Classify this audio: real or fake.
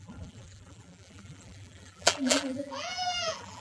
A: fake